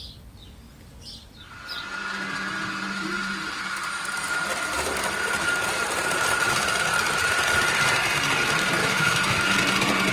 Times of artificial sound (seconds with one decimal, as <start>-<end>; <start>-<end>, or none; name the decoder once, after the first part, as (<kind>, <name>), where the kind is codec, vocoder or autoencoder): 8.8-9.4 (autoencoder, DAC-VAE)

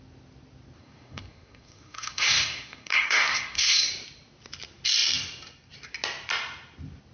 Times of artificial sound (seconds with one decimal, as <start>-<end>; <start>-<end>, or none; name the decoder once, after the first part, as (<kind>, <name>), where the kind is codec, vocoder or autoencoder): 0.8-3.9 (codec, SNAC)

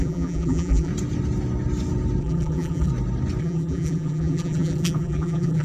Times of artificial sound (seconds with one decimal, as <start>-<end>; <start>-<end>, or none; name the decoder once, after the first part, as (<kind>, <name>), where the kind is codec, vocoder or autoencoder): 0.0-0.9 (vocoder, BigVGAN v2); 2.2-2.9; 3.4-5.6

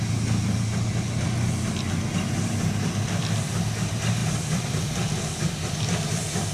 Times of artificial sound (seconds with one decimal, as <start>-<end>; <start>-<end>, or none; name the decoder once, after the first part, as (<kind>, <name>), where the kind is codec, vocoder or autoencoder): 4.2-4.8 (vocoder, BigVGAN v2)

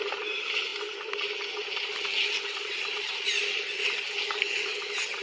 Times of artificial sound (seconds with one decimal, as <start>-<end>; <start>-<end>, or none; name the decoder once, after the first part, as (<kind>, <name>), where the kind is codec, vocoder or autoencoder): none

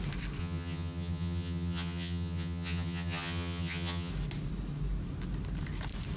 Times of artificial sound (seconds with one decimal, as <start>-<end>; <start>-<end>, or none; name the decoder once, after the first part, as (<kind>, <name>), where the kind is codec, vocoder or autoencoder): 0.4-4.1 (vocoder, HiFi-GAN)